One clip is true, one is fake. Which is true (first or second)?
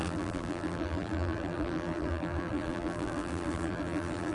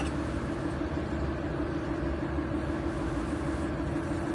second